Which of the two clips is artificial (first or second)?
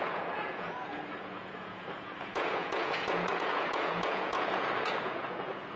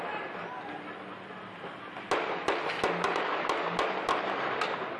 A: first